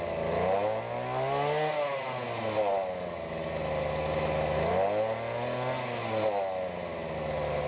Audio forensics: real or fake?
real